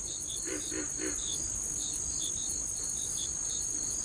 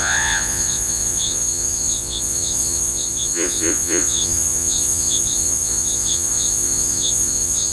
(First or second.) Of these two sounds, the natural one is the first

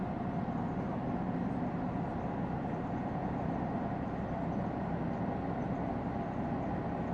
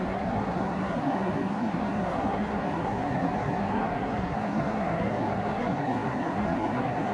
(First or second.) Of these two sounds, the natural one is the first